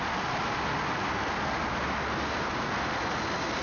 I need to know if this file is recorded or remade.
recorded